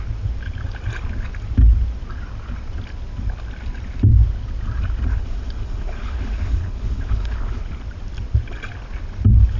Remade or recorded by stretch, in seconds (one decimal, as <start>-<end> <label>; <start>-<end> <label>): 0.0-5.1 recorded; 5.1-7.6 remade; 7.6-9.6 recorded